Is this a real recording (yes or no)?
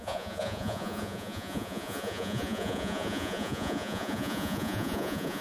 no